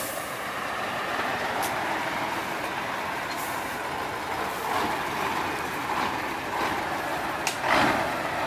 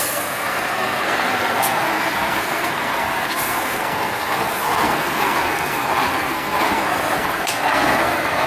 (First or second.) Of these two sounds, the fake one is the second